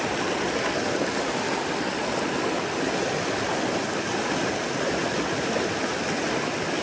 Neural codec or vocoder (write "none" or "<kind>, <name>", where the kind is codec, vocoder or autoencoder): none